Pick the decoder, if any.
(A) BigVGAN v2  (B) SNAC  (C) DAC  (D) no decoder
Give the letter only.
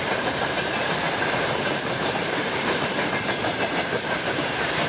A